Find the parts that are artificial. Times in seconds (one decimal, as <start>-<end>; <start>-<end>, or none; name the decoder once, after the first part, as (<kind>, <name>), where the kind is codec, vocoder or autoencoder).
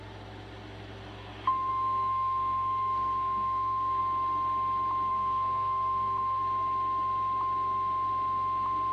1.7-4.0 (codec, SNAC); 5.1-6.4